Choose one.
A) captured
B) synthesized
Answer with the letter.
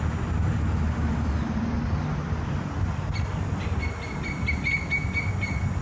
A